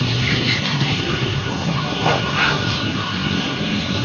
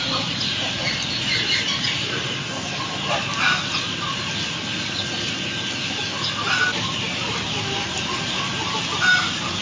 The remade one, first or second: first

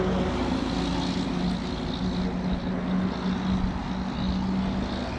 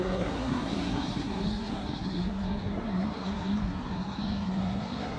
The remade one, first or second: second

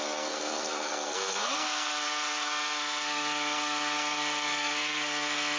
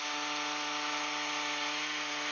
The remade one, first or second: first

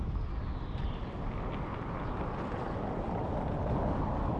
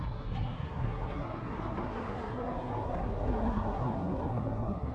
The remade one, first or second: second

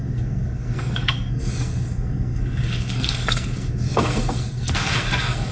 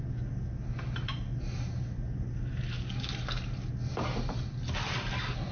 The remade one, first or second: first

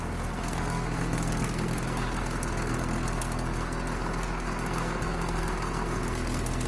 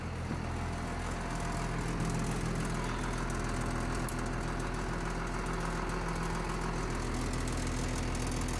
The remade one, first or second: first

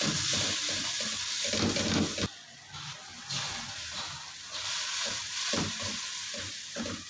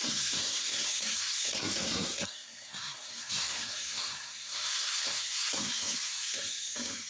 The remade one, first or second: second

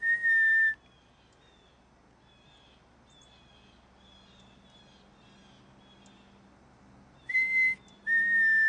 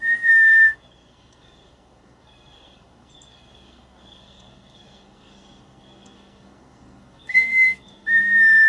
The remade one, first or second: second